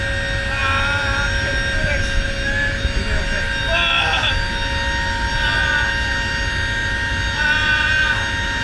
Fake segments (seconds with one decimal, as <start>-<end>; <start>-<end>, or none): none